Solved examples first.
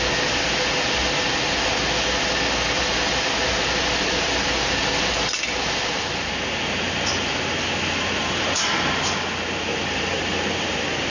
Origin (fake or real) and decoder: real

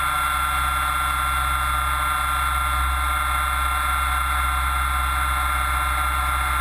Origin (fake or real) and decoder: real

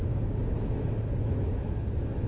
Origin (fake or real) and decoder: fake, autoencoder, DAC-VAE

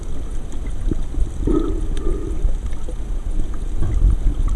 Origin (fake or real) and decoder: real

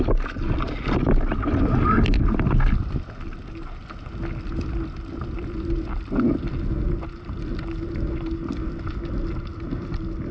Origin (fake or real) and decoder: real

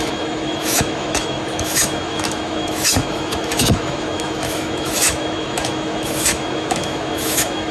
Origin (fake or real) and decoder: fake, autoencoder, DAC-VAE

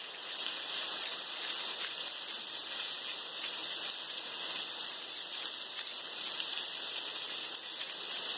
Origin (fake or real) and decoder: real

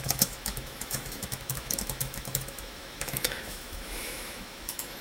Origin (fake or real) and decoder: fake, autoencoder, DAC-VAE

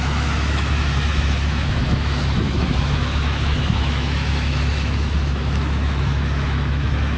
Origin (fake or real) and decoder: fake, autoencoder, DAC-VAE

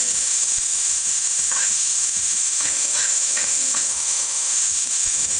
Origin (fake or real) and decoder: fake, autoencoder, DAC-VAE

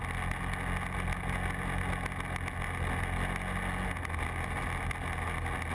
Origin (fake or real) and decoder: real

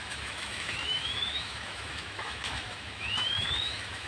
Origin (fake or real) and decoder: fake, autoencoder, DAC-VAE